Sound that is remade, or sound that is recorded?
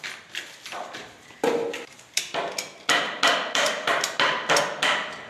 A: recorded